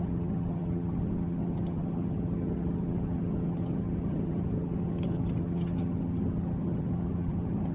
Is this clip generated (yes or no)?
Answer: yes